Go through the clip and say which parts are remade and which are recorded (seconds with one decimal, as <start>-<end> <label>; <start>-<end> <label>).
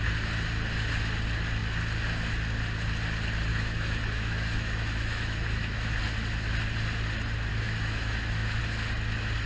0.0-3.5 recorded; 3.5-5.9 remade; 5.9-7.5 recorded; 7.5-8.6 remade; 8.6-9.5 recorded